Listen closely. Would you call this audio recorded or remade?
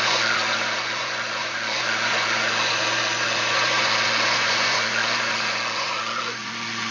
remade